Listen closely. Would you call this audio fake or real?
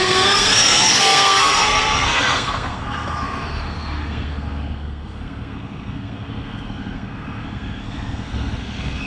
fake